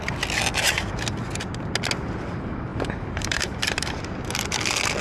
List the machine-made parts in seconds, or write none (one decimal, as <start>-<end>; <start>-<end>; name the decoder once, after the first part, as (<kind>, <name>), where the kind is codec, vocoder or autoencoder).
2.7-3.9 (vocoder, BigVGAN v2)